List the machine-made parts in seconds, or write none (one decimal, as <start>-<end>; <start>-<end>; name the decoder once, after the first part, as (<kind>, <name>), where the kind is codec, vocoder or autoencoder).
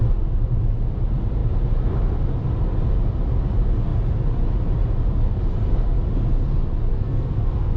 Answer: 6.9-7.8 (codec, SNAC)